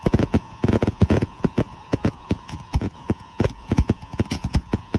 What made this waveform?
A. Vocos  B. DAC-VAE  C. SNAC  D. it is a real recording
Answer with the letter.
A